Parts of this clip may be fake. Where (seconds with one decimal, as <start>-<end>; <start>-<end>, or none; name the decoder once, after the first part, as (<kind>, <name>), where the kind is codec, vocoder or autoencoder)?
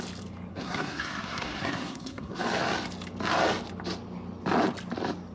0.5-2.4 (codec, SNAC)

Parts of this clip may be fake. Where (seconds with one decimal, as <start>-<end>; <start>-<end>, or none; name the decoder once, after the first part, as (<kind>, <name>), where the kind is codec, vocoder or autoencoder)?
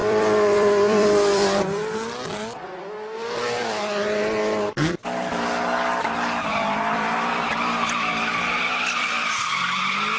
0.0-2.8 (vocoder, BigVGAN v2); 6.5-10.2